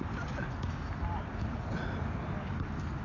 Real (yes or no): yes